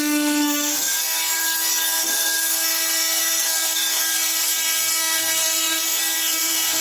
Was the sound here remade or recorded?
remade